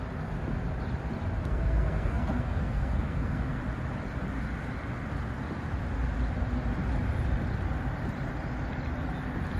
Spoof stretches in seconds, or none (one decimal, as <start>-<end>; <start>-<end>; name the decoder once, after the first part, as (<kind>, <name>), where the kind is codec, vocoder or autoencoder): 1.4-3.6 (codec, SNAC)